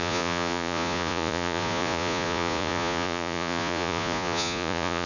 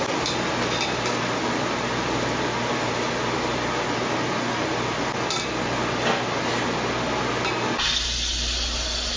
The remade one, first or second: first